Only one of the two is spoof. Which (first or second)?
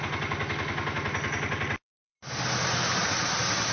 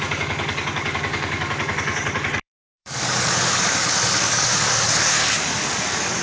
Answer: second